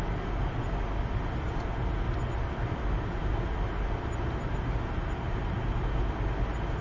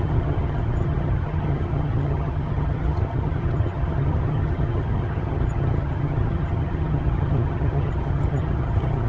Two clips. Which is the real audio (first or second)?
first